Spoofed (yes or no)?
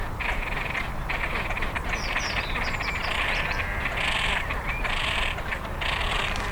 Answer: yes